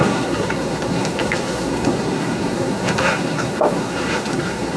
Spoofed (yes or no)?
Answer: yes